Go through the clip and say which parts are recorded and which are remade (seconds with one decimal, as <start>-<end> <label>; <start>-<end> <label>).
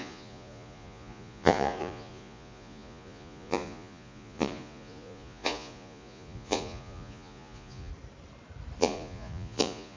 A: 0.0-7.9 remade; 7.9-8.8 recorded; 8.8-10.0 remade